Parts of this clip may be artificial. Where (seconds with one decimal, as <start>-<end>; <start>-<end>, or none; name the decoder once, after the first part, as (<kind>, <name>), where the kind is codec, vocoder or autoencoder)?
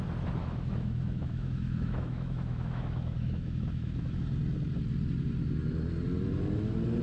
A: 0.4-4.2 (autoencoder, DAC-VAE)